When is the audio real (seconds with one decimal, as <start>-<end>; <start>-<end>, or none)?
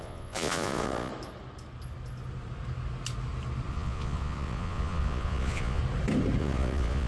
1.1-3.7; 5.8-6.4